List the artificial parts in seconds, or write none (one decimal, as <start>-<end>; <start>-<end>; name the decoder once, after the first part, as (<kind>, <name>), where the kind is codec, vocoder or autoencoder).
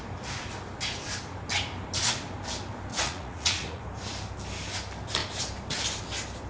2.9-3.8 (vocoder, Vocos)